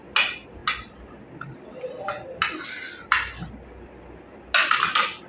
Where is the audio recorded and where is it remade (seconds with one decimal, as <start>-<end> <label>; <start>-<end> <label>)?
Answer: 0.0-5.3 recorded